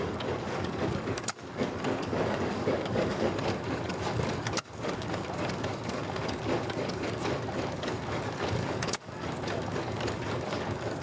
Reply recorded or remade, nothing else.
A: remade